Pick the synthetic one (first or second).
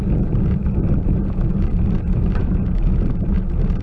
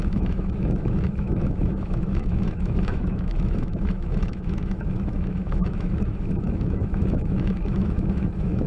second